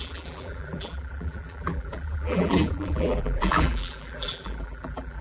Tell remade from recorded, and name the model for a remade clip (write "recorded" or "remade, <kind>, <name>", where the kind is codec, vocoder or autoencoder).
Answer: remade, vocoder, BigVGAN v2